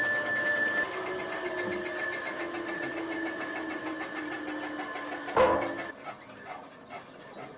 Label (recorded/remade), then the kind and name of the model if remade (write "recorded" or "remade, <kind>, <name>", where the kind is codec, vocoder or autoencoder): recorded